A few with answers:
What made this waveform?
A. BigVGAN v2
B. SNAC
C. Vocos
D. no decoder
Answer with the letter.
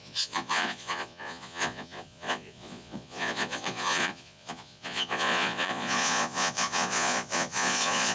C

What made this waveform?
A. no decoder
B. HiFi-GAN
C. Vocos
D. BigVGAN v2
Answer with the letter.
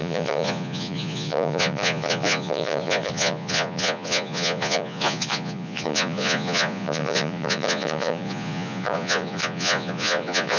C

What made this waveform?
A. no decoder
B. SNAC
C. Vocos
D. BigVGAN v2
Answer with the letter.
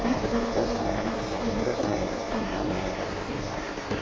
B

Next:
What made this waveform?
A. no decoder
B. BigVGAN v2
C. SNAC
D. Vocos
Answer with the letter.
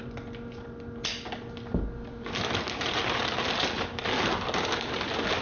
A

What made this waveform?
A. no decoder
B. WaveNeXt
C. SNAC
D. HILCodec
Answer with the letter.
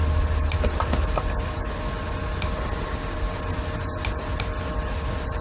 A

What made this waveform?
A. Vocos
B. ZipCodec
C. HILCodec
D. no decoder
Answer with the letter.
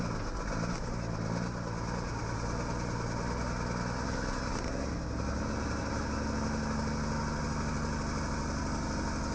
D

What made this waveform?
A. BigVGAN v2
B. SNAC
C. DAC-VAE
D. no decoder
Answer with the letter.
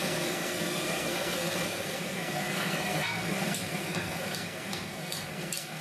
B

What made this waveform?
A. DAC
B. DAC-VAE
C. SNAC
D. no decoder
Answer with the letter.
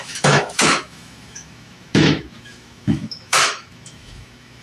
B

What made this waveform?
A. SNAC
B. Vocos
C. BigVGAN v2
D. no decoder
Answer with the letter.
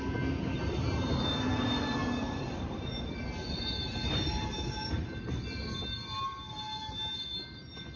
D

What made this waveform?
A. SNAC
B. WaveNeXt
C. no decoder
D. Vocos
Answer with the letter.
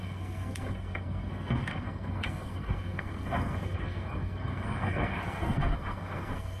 A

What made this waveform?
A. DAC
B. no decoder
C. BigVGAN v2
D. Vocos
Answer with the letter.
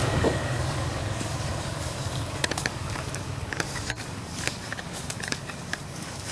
A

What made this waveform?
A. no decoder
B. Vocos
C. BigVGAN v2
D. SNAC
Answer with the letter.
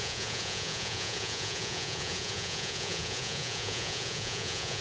B